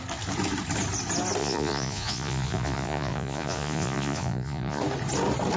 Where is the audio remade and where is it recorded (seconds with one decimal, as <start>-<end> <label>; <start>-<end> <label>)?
0.0-1.4 recorded; 1.4-4.8 remade; 4.8-5.6 recorded